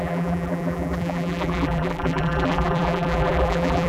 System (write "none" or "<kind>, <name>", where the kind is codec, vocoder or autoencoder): vocoder, BigVGAN v2